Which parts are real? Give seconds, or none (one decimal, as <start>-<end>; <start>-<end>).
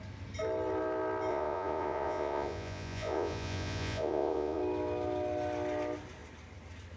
0.0-1.3; 4.6-7.0